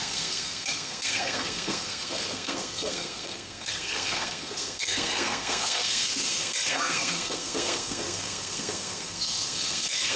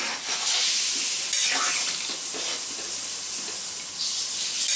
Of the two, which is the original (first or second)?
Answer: second